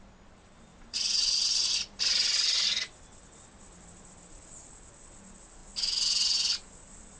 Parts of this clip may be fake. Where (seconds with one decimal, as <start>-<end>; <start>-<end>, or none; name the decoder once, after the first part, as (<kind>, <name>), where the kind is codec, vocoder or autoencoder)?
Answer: 0.7-4.7 (vocoder, BigVGAN v2)